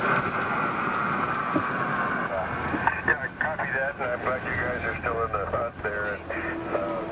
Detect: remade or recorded recorded